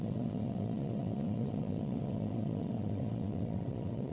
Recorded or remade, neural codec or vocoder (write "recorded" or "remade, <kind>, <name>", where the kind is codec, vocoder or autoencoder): remade, vocoder, WaveNeXt